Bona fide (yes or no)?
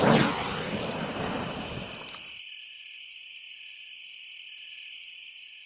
yes